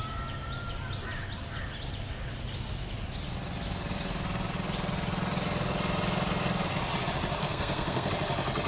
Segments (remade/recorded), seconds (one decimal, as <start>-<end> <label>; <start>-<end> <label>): 0.0-7.4 recorded; 7.4-8.1 remade; 8.1-8.7 recorded